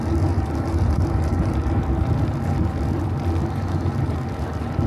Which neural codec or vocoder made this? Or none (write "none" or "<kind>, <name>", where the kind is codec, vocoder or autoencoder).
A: none